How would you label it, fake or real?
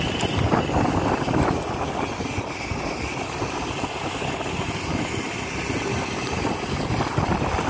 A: real